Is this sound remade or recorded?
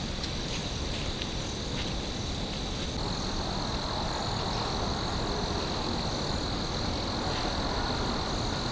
recorded